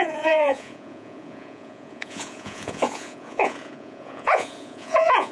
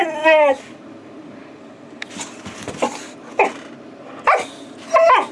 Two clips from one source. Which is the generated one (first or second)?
first